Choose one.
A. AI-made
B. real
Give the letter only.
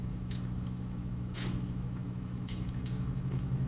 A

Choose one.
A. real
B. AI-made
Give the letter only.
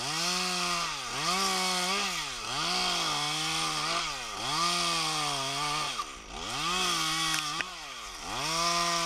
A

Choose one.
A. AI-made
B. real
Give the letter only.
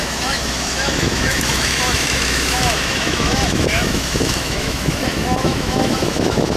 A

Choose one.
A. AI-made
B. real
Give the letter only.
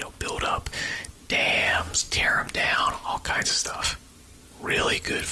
B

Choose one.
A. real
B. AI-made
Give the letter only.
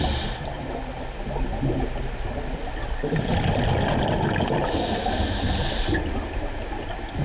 A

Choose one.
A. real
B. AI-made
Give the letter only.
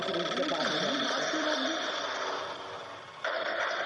A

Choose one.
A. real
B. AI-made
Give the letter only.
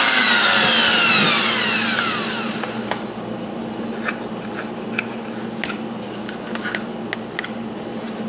A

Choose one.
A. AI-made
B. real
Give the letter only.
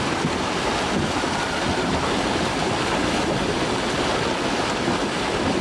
B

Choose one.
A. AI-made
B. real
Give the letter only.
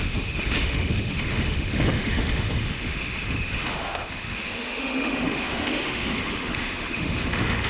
A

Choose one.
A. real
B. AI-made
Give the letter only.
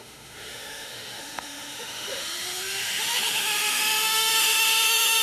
B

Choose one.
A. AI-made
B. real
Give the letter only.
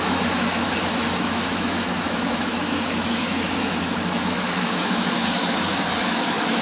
A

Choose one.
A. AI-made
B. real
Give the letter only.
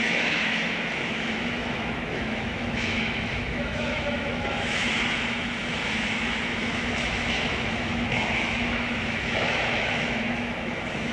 A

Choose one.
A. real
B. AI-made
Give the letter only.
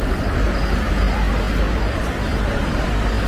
A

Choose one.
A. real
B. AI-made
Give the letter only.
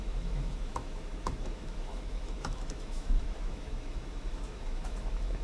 B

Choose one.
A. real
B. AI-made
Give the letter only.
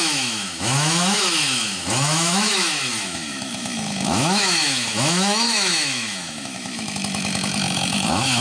B